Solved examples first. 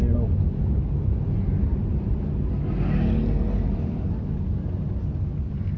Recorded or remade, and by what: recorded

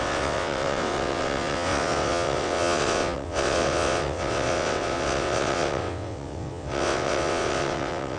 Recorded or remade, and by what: remade, vocoder, WaveNeXt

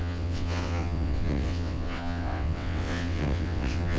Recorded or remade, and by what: remade, vocoder, WaveNeXt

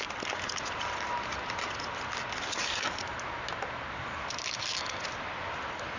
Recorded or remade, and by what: recorded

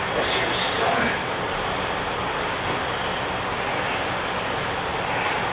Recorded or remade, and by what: recorded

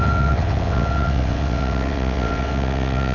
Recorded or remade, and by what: remade, vocoder, WaveNeXt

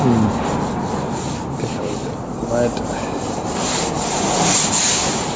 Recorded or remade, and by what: recorded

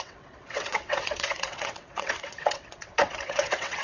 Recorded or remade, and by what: remade, vocoder, WaveNeXt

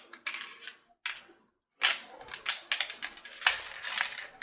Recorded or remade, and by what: recorded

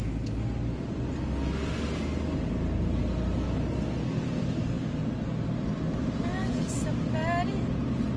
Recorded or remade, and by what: recorded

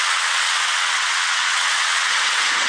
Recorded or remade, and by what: remade, vocoder, WaveNeXt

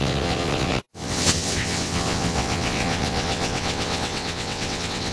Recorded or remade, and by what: remade, vocoder, WaveNeXt